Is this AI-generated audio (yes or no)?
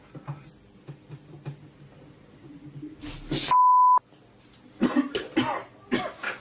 no